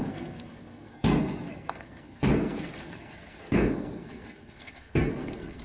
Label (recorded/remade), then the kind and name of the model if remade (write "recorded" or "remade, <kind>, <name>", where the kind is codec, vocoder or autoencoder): remade, codec, SNAC